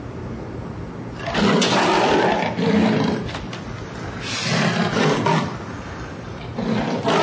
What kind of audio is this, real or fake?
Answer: real